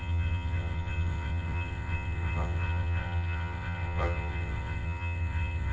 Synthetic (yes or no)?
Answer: yes